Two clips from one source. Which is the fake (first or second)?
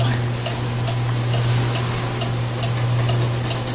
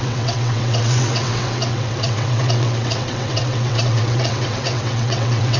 second